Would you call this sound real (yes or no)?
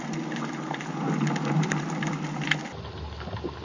yes